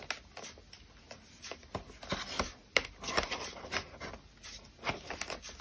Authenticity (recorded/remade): recorded